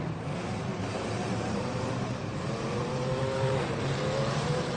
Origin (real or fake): fake